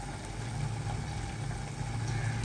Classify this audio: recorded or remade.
recorded